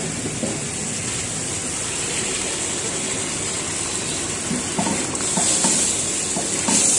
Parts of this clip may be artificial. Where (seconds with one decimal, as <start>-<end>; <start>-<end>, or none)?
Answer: none